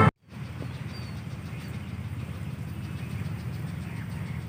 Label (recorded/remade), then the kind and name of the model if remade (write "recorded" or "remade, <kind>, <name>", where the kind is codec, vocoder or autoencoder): recorded